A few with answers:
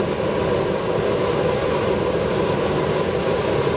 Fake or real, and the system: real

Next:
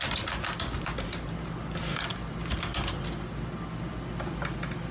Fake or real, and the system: real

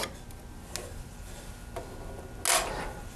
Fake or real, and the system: real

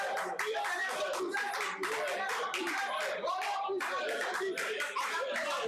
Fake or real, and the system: real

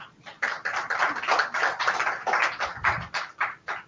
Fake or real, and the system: real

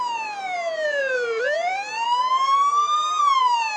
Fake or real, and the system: real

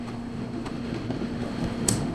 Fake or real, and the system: fake, autoencoder, DAC-VAE